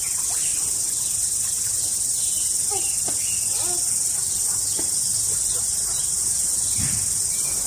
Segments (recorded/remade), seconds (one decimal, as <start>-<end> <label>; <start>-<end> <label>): 0.0-0.5 recorded; 0.5-1.8 remade; 1.8-4.5 recorded; 4.5-6.8 remade; 6.8-7.7 recorded